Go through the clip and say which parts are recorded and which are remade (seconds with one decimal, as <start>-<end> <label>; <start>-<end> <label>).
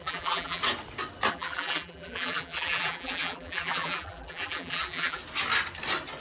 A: 0.0-0.6 remade; 0.6-1.3 recorded; 1.3-5.2 remade; 5.2-6.2 recorded